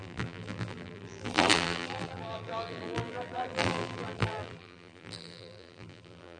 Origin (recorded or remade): remade